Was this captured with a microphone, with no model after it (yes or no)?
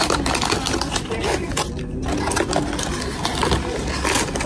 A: yes